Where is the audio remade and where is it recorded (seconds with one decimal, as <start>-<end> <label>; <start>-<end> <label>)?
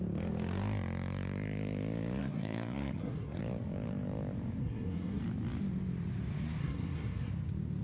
0.0-2.2 recorded; 2.2-3.4 remade; 3.4-4.6 recorded; 4.6-5.2 remade; 5.2-6.6 recorded; 6.6-7.3 remade; 7.3-7.8 recorded